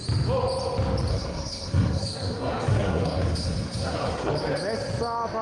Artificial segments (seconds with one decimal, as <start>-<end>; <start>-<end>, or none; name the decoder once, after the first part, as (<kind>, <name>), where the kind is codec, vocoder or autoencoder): 1.1-4.3 (codec, SNAC)

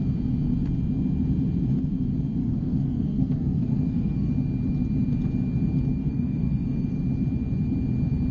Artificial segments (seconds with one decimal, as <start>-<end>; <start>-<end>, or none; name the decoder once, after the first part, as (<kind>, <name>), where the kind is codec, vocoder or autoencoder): 2.4-4.3 (codec, SNAC); 6.0-7.0

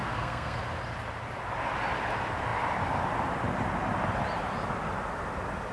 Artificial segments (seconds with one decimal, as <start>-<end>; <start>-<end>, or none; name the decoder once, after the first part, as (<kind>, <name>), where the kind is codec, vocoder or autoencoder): 0.0-0.6 (codec, SNAC)

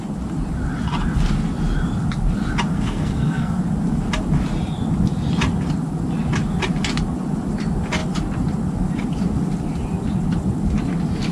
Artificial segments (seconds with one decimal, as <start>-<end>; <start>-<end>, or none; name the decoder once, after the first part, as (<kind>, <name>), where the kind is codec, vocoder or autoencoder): 2.7-3.6 (codec, SNAC)

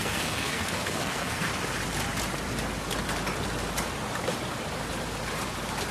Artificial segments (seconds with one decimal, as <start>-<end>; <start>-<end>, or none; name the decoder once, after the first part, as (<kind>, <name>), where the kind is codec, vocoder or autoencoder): 0.0-1.5 (codec, SNAC)

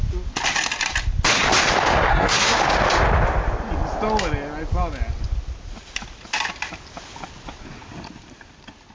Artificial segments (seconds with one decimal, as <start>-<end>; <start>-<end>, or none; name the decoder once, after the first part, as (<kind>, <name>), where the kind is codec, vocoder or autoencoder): 2.1-2.6 (codec, SNAC)

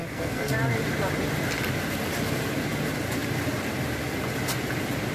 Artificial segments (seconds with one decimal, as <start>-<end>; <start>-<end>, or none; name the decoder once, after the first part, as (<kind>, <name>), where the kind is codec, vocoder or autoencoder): 0.0-0.5 (codec, SNAC)

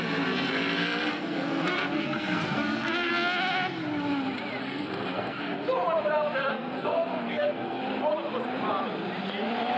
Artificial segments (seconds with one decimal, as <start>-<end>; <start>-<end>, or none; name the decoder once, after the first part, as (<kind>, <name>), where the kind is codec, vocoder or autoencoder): 1.1-3.1 (codec, SNAC); 4.6-5.4; 6.4-7.8